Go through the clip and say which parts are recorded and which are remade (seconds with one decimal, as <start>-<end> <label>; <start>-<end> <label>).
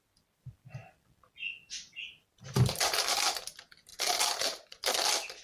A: 0.0-5.4 recorded